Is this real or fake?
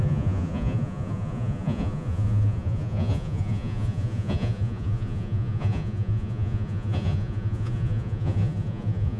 fake